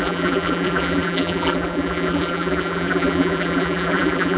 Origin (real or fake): fake